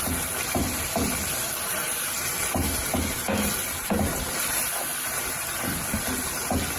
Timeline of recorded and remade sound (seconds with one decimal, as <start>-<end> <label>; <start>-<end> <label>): 0.0-6.8 recorded